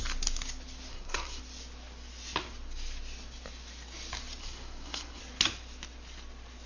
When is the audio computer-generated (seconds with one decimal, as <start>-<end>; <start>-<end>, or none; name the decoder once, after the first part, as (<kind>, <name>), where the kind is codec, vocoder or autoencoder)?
0.9-1.4 (codec, SNAC); 4.4-5.2